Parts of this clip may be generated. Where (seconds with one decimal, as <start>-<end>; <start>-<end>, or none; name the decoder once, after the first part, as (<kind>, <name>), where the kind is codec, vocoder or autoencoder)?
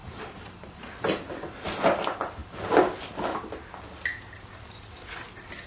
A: 0.0-0.9 (vocoder, BigVGAN v2)